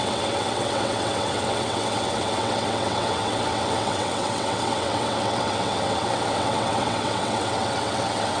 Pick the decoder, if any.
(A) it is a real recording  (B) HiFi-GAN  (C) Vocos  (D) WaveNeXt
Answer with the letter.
D